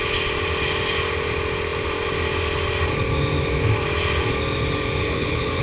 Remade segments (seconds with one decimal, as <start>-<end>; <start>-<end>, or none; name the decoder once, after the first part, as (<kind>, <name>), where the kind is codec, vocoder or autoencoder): 5.0-5.6 (codec, HILCodec)